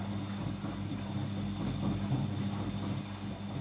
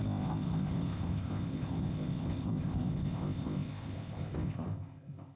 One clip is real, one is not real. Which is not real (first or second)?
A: second